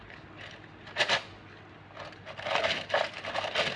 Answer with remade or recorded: recorded